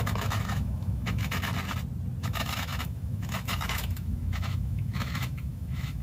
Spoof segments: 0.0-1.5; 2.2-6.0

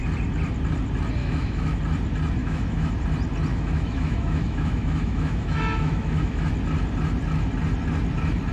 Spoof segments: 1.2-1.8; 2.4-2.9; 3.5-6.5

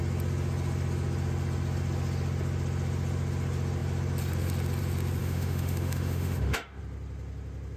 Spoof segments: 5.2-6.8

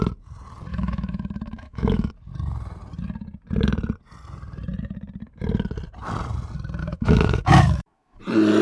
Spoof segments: 0.7-2.1; 6.8-8.2

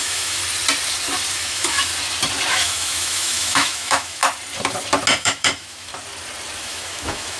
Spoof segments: 0.0-0.4; 1.3-1.9; 2.5-4.2; 5.2-5.9; 6.6-7.4

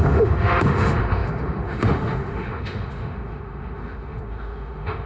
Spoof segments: 0.0-5.1